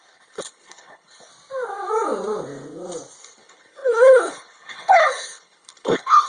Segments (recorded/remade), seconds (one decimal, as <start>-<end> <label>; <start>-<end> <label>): 0.0-1.3 remade; 1.3-3.2 recorded; 3.2-6.3 remade